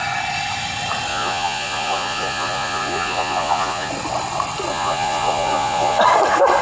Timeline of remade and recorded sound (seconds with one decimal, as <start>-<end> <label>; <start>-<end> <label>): 0.0-1.1 recorded; 1.1-3.9 remade; 3.9-4.7 recorded; 4.7-6.0 remade; 6.0-6.6 recorded